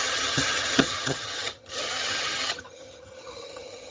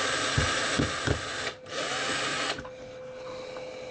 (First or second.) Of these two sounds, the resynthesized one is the first